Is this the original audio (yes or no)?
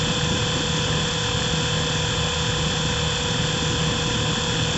yes